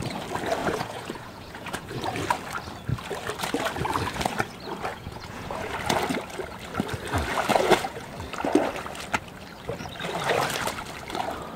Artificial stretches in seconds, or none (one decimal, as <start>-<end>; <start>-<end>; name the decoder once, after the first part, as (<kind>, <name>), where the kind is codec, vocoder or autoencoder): 0.6-2.0 (vocoder, Vocos); 4.9-5.7; 7.5-8.1